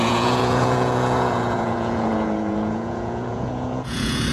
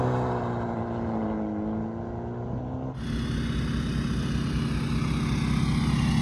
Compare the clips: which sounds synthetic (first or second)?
first